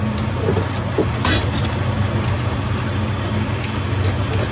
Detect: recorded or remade recorded